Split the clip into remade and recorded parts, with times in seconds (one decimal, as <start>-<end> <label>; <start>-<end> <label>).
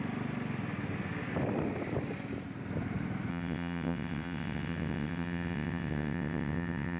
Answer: 0.0-3.3 recorded; 3.3-7.0 remade